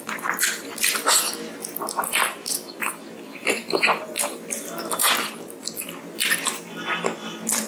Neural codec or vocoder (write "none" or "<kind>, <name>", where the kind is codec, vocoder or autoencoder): none